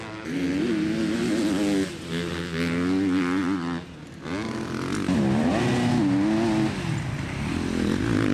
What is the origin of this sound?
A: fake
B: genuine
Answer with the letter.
B